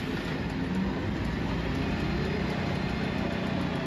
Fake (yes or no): no